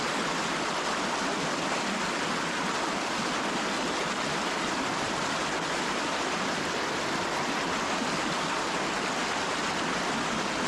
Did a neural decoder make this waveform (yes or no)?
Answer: no